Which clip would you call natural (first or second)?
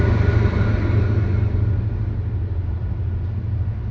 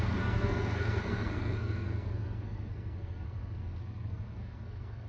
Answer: first